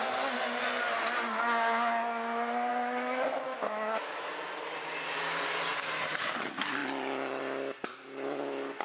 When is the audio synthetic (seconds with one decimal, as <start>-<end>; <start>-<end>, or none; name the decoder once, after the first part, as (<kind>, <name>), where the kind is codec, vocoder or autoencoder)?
2.7-4.3 (autoencoder, DAC-VAE)

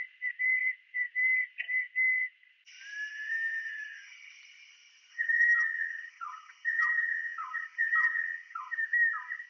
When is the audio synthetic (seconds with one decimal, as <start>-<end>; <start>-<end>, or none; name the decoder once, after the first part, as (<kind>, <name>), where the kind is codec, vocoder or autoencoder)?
3.1-4.3 (vocoder, HiFi-GAN); 5.1-8.7

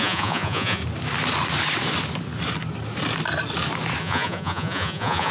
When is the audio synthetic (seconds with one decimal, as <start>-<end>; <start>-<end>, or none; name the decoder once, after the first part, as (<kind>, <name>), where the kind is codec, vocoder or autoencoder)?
0.0-0.8 (vocoder, Vocos); 4.0-5.3

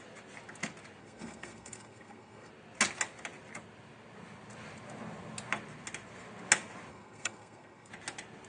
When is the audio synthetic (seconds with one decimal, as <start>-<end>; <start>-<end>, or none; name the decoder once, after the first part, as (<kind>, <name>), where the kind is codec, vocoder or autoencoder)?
1.0-2.5 (codec, SNAC); 6.9-7.9

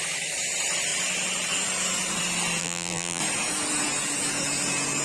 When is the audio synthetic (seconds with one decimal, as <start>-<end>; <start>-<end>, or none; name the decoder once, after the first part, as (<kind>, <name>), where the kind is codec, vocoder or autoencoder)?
2.6-3.2 (vocoder, BigVGAN v2)

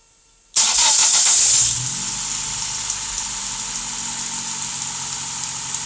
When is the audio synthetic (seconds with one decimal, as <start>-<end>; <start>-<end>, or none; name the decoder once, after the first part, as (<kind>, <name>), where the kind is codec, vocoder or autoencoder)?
none